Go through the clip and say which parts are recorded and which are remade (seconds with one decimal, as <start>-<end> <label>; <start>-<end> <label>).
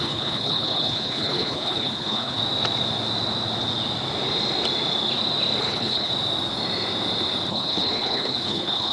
0.0-2.4 remade; 2.4-5.6 recorded; 5.6-6.1 remade; 6.1-7.5 recorded; 7.5-8.9 remade